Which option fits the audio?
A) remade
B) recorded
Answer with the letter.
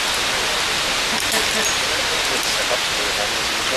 B